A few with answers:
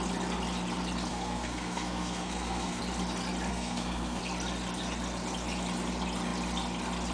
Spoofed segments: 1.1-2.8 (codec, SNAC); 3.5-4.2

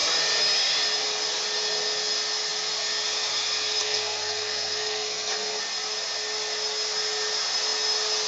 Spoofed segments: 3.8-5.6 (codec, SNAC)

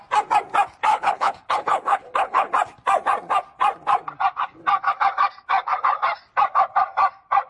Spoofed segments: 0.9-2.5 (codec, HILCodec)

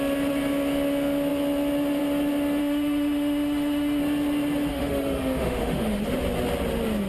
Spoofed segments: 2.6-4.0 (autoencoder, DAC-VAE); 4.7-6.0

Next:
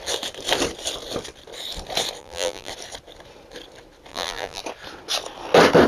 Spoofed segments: 2.2-2.7 (vocoder, BigVGAN v2); 4.1-4.6

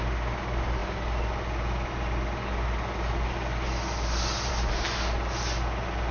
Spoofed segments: none

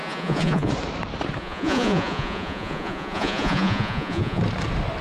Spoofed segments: 0.0-0.7 (vocoder, Vocos); 1.4-4.4